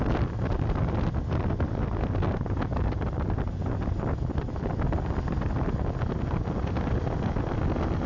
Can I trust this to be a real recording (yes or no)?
yes